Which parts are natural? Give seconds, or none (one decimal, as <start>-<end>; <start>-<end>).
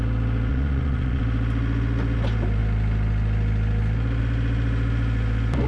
0.0-0.5; 1.2-5.7